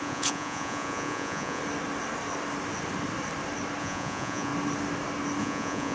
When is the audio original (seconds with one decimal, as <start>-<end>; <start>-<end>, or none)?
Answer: 1.6-3.8; 4.5-5.4